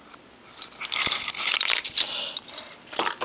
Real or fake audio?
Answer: real